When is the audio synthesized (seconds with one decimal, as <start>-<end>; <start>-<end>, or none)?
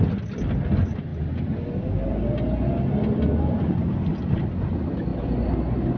none